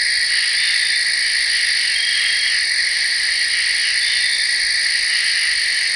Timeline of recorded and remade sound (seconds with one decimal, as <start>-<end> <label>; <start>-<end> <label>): 0.0-6.0 recorded